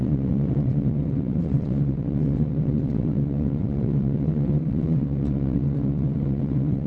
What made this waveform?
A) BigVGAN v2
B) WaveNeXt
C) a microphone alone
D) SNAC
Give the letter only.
B